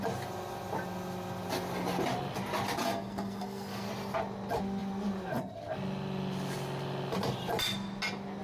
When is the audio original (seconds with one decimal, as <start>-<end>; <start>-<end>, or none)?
0.0-2.8; 3.9-8.4